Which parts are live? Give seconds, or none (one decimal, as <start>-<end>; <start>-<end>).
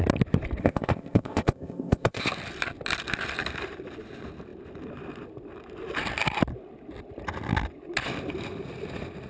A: 0.0-0.6; 2.3-9.3